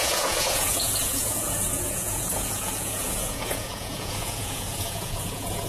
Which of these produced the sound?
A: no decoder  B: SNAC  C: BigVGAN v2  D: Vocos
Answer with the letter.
D